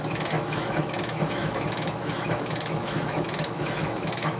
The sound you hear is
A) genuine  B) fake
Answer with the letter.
B